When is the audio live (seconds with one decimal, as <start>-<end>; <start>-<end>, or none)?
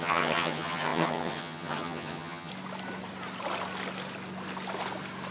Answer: 2.5-5.3